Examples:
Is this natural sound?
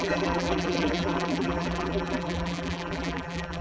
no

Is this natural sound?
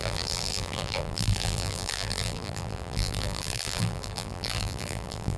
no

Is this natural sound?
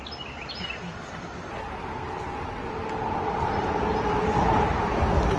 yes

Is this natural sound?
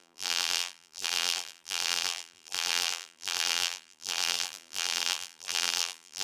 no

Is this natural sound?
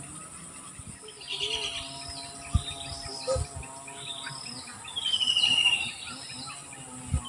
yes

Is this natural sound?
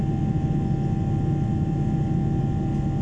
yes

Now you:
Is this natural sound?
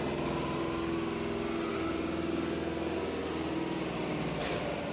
yes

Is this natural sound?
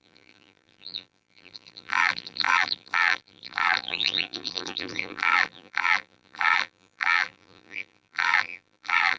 no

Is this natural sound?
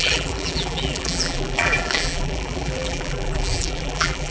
no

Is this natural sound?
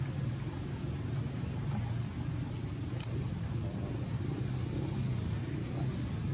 yes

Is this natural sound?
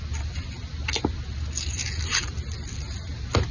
yes